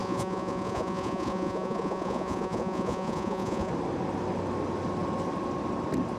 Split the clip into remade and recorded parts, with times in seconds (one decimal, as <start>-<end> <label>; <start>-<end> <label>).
0.0-3.7 remade; 3.7-6.2 recorded